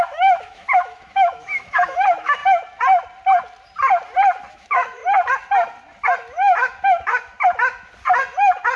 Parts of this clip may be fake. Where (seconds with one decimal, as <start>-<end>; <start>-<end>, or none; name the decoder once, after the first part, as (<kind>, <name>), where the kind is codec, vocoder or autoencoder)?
0.0-2.4 (autoencoder, DAC-VAE); 4.5-5.0